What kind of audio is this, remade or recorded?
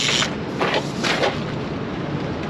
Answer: recorded